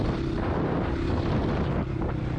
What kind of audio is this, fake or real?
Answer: real